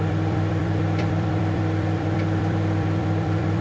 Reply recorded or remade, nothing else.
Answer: remade